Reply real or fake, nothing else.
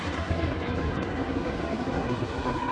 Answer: fake